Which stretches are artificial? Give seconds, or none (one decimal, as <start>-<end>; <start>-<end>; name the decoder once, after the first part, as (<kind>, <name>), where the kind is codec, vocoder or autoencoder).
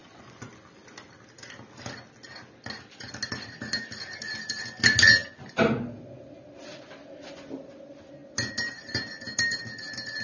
0.0-0.5 (vocoder, Vocos)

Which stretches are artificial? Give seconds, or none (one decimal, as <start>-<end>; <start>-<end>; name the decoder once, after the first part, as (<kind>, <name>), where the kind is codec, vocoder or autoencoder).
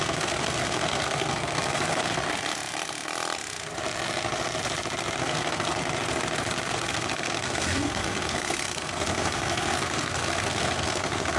0.0-2.2 (codec, SNAC); 5.2-5.8; 6.7-11.4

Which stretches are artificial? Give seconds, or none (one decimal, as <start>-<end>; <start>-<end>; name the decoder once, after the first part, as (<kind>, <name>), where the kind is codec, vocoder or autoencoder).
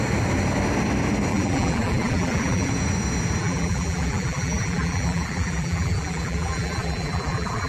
1.3-2.7 (vocoder, BigVGAN v2); 3.4-7.7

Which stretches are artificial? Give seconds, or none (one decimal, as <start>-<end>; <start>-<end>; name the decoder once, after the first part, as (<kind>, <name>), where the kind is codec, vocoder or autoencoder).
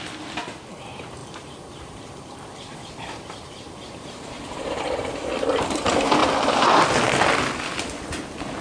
1.2-5.1 (vocoder, BigVGAN v2)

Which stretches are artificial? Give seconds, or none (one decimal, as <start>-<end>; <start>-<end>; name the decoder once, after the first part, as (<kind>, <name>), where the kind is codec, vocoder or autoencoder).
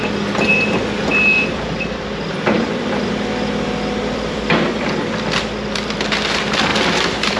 0.5-4.4 (vocoder, BigVGAN v2); 6.7-7.4